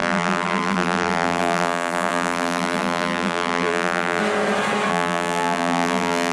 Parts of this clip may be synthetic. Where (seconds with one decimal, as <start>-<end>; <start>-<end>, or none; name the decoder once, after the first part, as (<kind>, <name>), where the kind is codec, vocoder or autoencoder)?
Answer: 0.0-4.2 (vocoder, BigVGAN v2); 4.9-6.3